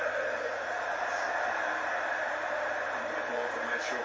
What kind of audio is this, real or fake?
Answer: fake